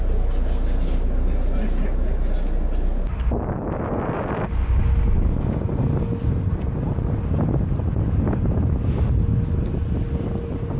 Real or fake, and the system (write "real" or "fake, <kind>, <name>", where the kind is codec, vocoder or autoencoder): real